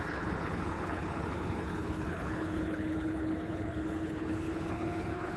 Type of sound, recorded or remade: remade